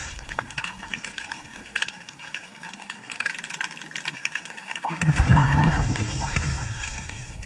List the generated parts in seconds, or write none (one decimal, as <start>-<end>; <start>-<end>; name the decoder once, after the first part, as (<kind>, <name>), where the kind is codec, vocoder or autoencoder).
0.0-3.3 (codec, SNAC); 4.1-7.5